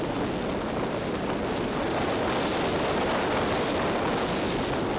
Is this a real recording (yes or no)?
yes